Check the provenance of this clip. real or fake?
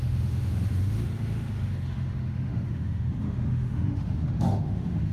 fake